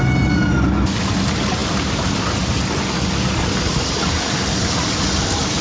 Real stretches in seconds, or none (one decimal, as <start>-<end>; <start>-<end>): 0.0-5.6